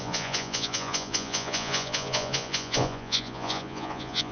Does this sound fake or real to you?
fake